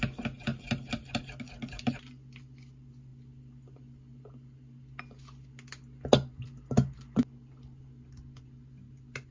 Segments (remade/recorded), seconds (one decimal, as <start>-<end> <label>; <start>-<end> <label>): 0.0-9.3 recorded